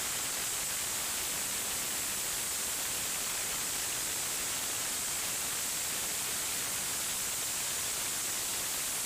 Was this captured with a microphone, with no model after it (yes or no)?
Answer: yes